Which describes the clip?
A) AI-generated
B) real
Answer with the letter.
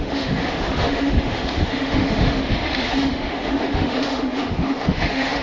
A